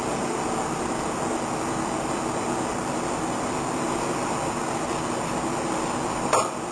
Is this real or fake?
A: real